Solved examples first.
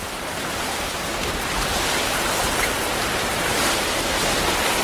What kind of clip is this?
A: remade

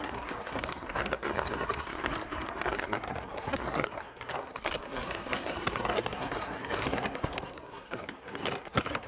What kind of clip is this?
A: remade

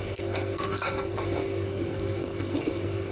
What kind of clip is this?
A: remade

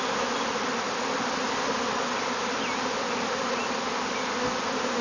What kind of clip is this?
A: recorded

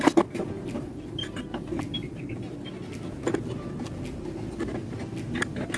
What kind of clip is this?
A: recorded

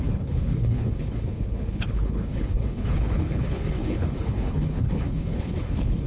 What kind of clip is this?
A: remade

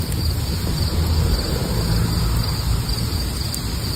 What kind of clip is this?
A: recorded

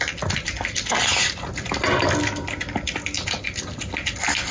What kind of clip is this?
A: recorded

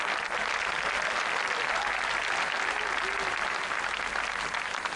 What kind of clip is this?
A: recorded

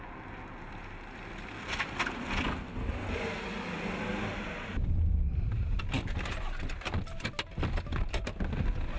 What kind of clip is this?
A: recorded